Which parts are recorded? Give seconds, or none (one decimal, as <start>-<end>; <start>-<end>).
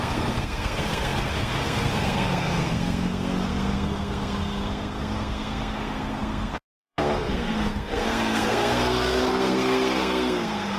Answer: none